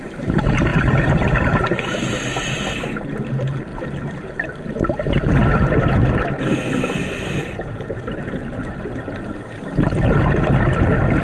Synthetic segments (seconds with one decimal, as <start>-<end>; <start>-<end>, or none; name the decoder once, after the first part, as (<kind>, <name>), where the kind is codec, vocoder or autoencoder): 0.7-2.1 (vocoder, BigVGAN v2); 7.4-8.1